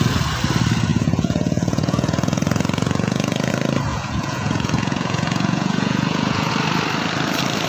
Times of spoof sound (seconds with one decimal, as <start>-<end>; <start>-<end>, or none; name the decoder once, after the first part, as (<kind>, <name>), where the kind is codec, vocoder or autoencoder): 0.9-3.5 (vocoder, Vocos); 3.9-6.5